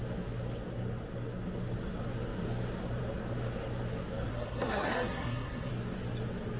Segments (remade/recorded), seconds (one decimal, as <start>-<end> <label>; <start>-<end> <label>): 0.0-4.3 recorded; 4.3-5.7 remade; 5.7-6.6 recorded